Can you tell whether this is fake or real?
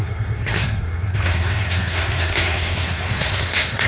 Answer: fake